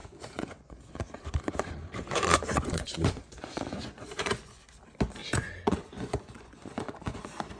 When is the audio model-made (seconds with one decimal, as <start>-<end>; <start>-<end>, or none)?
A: 0.0-4.6; 5.2-7.6